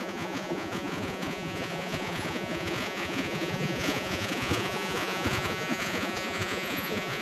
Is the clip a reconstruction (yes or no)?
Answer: yes